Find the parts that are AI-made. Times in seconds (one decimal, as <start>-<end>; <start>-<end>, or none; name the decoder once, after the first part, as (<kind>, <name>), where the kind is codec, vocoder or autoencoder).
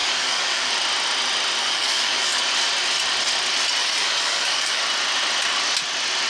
0.0-0.7 (codec, DAC); 1.6-2.4; 3.8-4.8